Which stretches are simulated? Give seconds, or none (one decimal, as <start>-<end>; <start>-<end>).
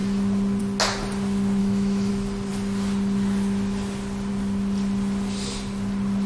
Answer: 1.6-2.1